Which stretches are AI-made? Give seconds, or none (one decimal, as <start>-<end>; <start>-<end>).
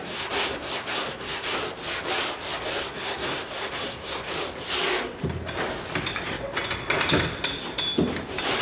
0.0-1.6; 2.6-4.3